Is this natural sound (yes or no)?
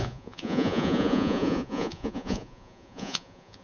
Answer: no